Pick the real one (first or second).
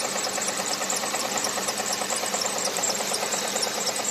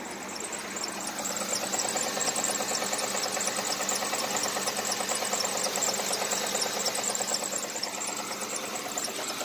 second